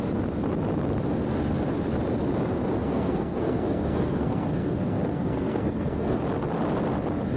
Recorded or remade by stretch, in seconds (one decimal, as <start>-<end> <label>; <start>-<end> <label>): 0.0-2.8 recorded; 2.8-6.2 remade; 6.2-7.4 recorded